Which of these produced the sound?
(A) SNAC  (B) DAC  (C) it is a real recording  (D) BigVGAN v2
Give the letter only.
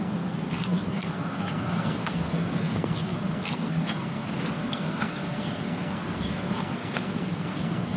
A